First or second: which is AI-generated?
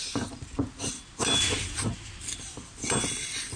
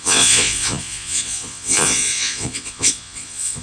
second